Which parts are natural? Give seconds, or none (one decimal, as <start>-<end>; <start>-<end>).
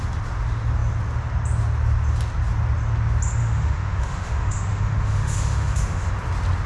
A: 0.0-3.4; 6.1-6.7